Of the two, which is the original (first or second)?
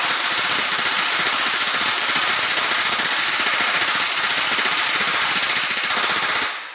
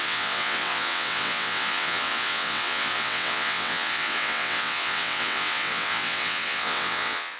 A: first